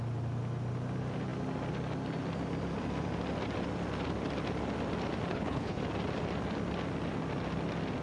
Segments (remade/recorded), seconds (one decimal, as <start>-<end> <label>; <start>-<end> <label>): 0.0-5.3 recorded; 5.3-5.8 remade; 5.8-8.0 recorded